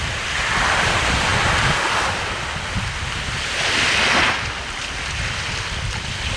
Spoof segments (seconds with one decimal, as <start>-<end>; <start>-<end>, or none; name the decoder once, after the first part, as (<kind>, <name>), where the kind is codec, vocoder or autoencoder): none